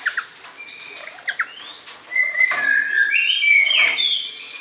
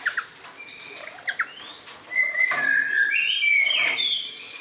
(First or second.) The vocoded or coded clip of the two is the second